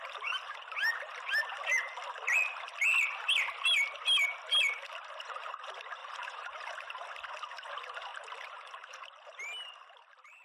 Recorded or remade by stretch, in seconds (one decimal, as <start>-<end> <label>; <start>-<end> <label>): 0.0-6.0 recorded; 6.0-7.1 remade; 7.1-8.1 recorded; 8.1-9.0 remade; 9.0-10.4 recorded